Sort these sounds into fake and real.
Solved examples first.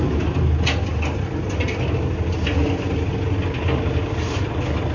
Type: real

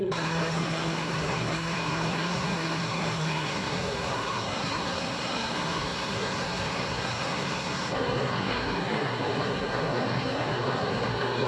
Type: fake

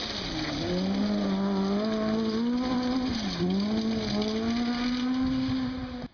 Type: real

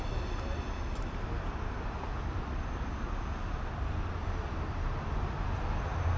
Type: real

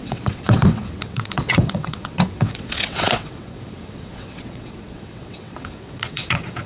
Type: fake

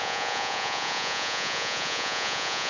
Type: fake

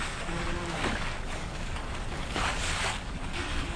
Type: fake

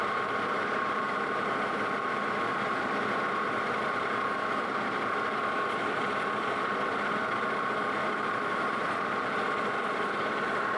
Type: real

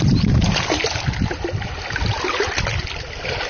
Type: real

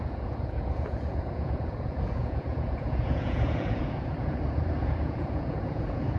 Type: fake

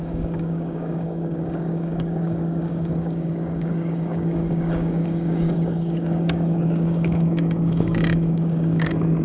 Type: fake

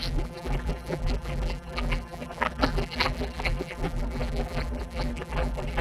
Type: fake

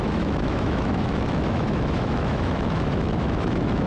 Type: fake